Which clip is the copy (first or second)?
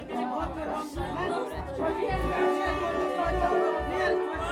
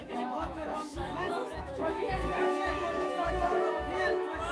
second